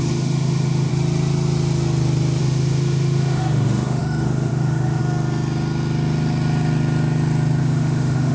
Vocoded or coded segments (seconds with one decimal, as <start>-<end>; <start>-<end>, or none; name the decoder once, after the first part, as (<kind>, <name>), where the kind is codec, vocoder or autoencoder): 0.0-0.9 (autoencoder, DAC-VAE); 2.4-5.0; 7.6-8.3